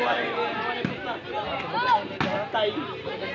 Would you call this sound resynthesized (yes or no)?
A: no